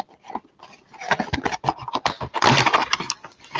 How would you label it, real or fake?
real